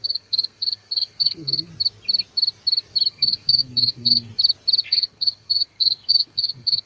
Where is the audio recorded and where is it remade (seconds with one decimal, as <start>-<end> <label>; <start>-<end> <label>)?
0.0-1.7 remade; 1.7-3.1 recorded; 3.1-4.3 remade; 4.3-4.9 recorded; 4.9-6.9 remade